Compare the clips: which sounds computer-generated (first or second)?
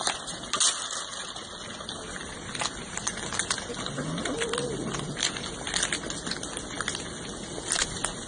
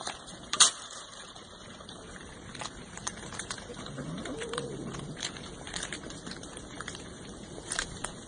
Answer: second